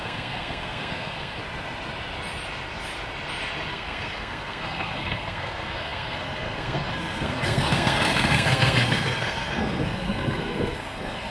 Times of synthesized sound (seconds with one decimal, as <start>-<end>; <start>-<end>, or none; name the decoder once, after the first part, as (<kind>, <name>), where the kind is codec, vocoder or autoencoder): 0.0-1.4 (codec, SNAC); 3.7-11.3